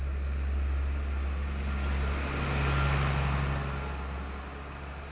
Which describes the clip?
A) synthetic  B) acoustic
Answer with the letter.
B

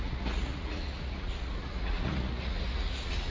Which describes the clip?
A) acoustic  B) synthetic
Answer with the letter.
B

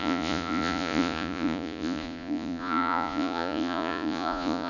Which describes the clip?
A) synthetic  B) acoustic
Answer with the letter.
A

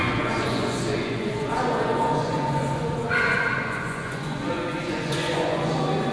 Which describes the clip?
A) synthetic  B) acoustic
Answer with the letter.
A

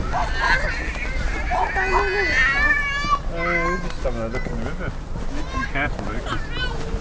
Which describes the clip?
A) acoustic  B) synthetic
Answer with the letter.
A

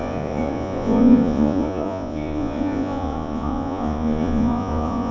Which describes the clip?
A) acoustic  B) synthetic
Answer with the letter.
B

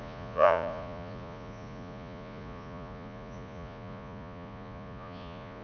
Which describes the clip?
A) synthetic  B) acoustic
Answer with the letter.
A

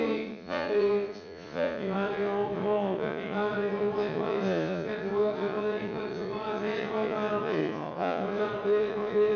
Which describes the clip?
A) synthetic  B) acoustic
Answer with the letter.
A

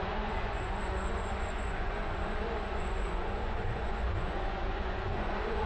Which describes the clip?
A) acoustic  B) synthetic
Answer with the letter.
B